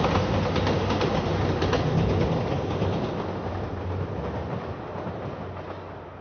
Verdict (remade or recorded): recorded